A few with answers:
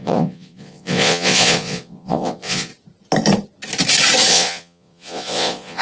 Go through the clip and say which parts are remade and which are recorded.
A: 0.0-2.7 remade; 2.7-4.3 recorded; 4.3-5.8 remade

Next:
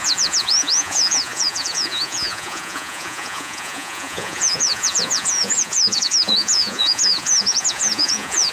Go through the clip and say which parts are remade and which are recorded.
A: 0.0-8.5 remade

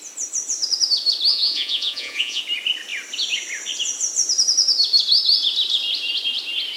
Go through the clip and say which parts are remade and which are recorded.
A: 0.0-1.3 recorded; 1.3-2.4 remade; 2.4-6.8 recorded

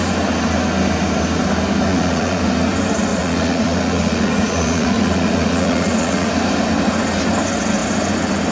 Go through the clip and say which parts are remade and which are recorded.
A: 0.0-1.9 recorded; 1.9-2.4 remade; 2.4-3.1 recorded; 3.1-6.3 remade; 6.3-8.5 recorded

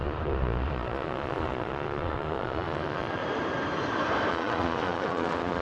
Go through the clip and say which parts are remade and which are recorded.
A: 0.0-3.2 remade; 3.2-4.3 recorded; 4.3-5.6 remade

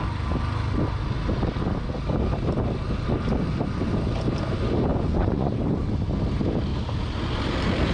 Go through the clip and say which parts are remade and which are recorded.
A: 0.0-4.9 recorded; 4.9-5.6 remade; 5.6-7.9 recorded

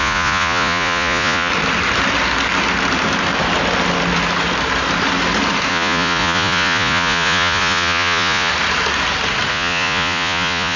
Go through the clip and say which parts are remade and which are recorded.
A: 0.0-1.5 remade; 1.5-5.7 recorded; 5.7-8.5 remade; 8.5-9.5 recorded; 9.5-10.8 remade

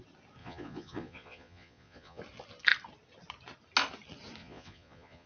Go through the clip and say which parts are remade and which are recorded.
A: 0.0-0.4 recorded; 0.4-2.2 remade; 2.2-4.4 recorded; 4.4-5.3 remade